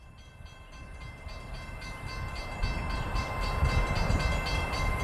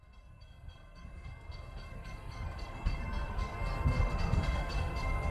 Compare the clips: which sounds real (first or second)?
first